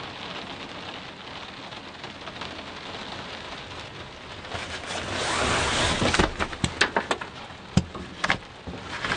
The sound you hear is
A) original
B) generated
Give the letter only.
A